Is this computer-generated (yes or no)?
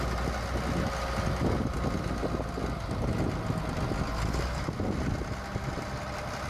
no